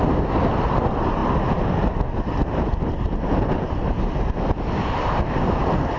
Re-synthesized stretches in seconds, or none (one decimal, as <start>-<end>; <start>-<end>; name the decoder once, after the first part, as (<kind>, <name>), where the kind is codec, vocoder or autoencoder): none